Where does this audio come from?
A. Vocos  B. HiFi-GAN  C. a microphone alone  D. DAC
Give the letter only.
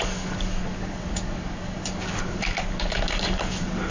D